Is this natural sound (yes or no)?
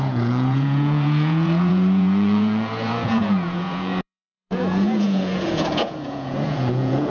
no